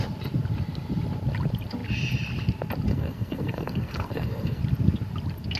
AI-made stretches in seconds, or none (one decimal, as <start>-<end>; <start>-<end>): 2.9-4.6